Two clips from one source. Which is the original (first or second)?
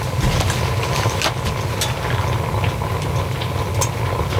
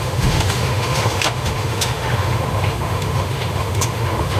first